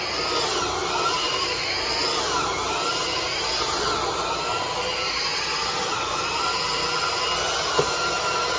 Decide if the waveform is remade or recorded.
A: recorded